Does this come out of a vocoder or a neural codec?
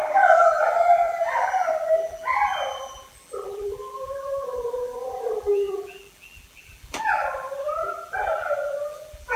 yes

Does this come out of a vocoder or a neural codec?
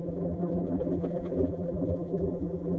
yes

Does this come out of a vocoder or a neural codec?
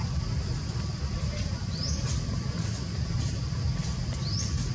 yes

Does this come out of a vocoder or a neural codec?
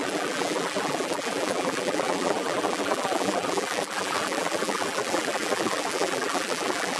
yes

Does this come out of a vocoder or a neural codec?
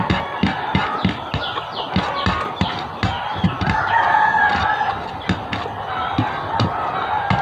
no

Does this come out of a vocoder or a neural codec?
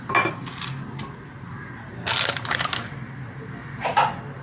no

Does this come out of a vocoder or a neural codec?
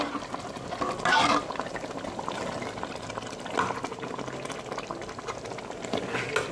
no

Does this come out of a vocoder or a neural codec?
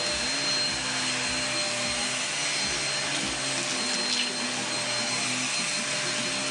no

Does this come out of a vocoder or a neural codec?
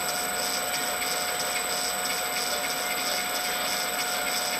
no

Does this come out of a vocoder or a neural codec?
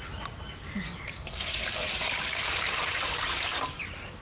yes